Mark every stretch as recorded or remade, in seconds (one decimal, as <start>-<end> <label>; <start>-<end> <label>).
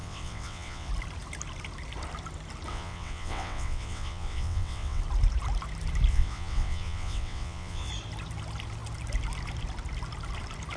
0.0-0.9 remade; 0.9-2.7 recorded; 2.7-5.0 remade; 5.0-6.1 recorded; 6.1-7.9 remade; 7.9-10.8 recorded